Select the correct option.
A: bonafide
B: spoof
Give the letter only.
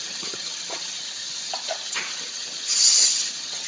B